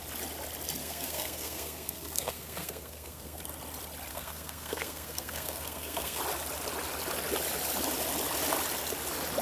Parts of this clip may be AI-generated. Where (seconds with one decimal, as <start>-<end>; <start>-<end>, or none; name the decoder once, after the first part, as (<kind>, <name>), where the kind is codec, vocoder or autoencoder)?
0.8-3.4 (codec, SNAC); 4.1-6.2